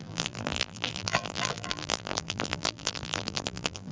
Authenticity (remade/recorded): remade